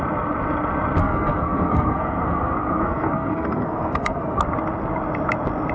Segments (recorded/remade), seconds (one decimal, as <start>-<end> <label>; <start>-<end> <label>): 0.0-1.0 recorded; 1.0-4.4 remade; 4.4-5.7 recorded